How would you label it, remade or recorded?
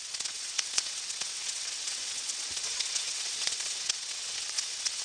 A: remade